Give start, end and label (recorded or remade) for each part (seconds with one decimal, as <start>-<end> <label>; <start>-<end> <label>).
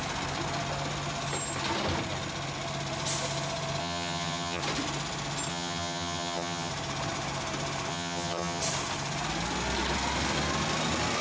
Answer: 0.0-3.8 recorded; 3.8-4.6 remade; 4.6-5.5 recorded; 5.5-6.7 remade; 6.7-7.9 recorded; 7.9-8.6 remade; 8.6-11.2 recorded